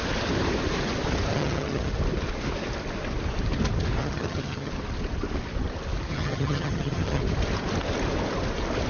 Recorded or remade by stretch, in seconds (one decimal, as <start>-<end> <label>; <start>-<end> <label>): 0.0-1.3 recorded; 1.3-1.9 remade; 1.9-4.0 recorded; 4.0-4.7 remade; 4.7-6.1 recorded; 6.1-7.2 remade; 7.2-8.9 recorded